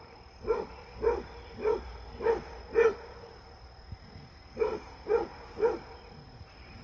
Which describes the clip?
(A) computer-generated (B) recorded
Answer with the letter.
A